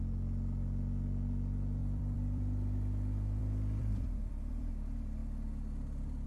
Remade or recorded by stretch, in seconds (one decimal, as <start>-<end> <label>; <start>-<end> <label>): 0.0-1.8 recorded; 1.8-3.4 remade; 3.4-3.8 recorded; 3.8-4.7 remade; 4.7-6.3 recorded